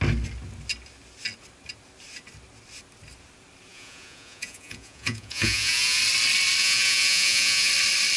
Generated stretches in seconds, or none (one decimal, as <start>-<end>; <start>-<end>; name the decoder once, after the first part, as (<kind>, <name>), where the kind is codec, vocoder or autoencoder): 3.7-6.0 (vocoder, Vocos); 6.6-7.7

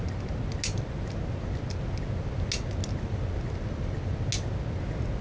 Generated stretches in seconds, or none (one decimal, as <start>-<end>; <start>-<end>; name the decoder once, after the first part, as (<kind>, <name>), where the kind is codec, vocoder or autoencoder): none

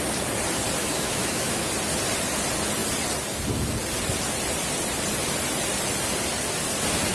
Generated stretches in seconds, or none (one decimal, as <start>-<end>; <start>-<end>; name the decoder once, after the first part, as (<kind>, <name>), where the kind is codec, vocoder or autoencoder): 0.8-1.7 (autoencoder, DAC-VAE)

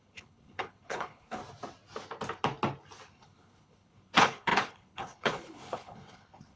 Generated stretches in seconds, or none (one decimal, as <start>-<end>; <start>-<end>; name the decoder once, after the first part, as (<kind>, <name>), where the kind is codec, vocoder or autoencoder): 0.0-1.4 (codec, HILCodec); 3.1-6.6

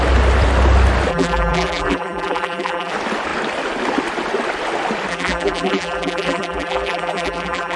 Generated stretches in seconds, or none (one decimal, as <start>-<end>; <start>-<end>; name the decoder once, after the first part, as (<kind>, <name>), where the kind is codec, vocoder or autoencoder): 1.1-2.9 (vocoder, BigVGAN v2); 5.1-7.8

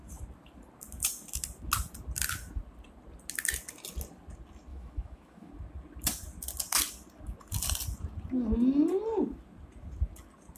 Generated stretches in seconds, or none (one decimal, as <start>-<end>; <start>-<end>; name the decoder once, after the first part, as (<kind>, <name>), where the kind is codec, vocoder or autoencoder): 4.7-5.5 (autoencoder, DAC-VAE)

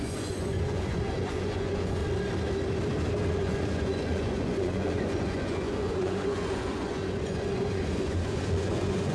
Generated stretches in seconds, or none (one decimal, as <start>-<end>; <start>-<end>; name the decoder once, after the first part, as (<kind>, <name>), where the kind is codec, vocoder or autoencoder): 0.0-2.0 (vocoder, Vocos); 3.3-9.1

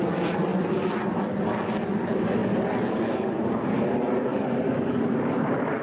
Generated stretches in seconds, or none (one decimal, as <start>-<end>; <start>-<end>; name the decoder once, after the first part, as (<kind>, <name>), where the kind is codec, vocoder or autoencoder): 4.3-5.8 (vocoder, BigVGAN v2)